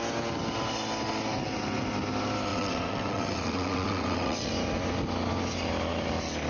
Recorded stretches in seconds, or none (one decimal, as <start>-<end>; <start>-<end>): 0.0-2.5; 4.5-6.5